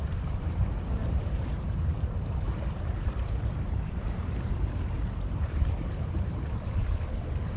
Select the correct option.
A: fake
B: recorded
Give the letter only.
A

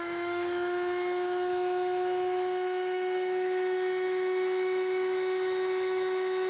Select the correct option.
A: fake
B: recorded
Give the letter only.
A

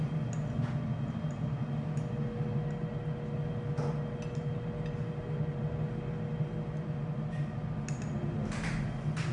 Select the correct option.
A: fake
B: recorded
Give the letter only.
B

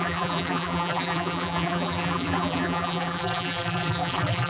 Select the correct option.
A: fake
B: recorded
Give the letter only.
A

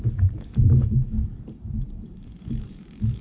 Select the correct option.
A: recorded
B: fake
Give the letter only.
B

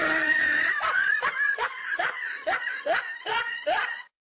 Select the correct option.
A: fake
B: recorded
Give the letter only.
A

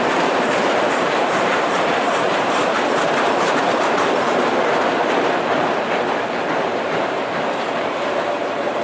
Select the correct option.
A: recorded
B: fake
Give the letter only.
B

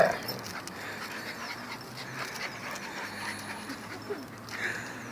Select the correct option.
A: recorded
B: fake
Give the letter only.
A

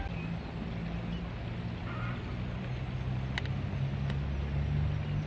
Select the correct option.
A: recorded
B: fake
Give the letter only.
A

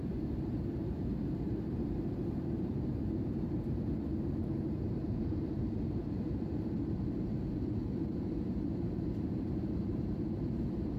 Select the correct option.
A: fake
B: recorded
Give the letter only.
A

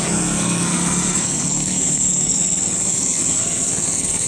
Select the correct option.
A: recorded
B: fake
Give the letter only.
B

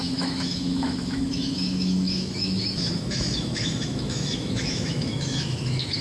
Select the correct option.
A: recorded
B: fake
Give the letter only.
B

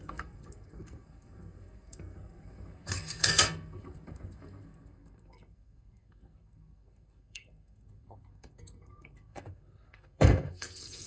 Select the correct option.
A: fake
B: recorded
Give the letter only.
A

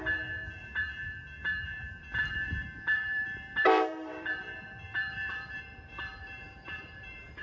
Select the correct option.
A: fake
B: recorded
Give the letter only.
A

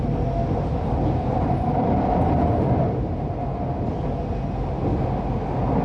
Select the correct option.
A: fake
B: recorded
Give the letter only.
B